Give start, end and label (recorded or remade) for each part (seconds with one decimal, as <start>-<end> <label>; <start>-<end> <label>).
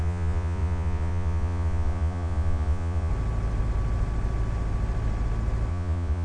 0.0-3.1 remade; 3.1-5.7 recorded; 5.7-6.2 remade